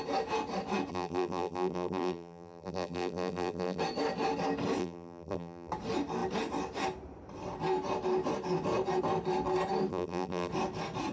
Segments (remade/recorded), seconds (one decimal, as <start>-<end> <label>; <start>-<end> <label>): 0.0-0.9 recorded; 0.9-3.8 remade; 3.8-4.8 recorded; 4.8-5.7 remade; 5.7-9.9 recorded; 9.9-10.5 remade; 10.5-11.1 recorded